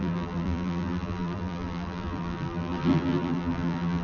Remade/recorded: remade